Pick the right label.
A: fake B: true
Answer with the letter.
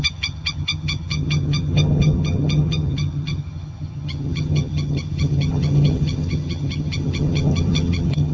A